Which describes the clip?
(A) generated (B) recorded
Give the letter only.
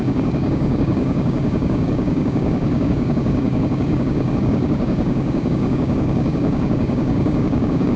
A